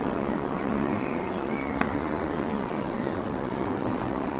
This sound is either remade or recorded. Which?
remade